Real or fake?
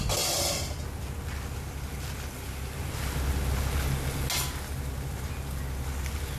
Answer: real